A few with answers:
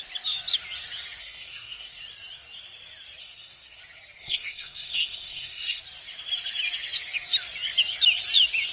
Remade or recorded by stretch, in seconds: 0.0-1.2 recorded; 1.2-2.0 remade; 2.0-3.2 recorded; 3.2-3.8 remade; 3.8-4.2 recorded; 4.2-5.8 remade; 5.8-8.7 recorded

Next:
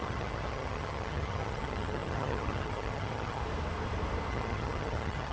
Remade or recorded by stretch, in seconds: 0.0-3.4 remade; 3.4-4.3 recorded; 4.3-5.3 remade

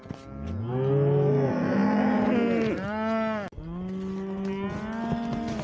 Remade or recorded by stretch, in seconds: 0.0-5.6 recorded

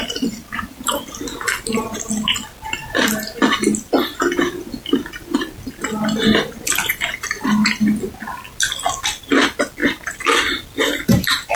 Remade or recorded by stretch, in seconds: 0.0-0.4 recorded; 0.4-1.0 remade; 1.0-11.6 recorded